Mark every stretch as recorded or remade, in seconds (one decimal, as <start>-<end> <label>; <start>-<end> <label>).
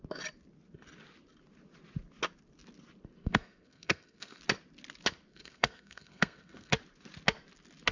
0.0-3.2 recorded; 3.2-4.4 remade; 4.4-5.3 recorded; 5.3-6.7 remade; 6.7-7.9 recorded